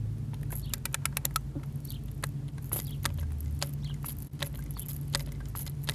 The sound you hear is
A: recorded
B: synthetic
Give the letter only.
A